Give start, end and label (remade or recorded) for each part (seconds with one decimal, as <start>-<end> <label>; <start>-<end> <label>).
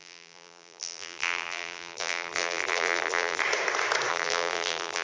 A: 0.0-3.4 remade; 3.4-4.1 recorded; 4.1-5.0 remade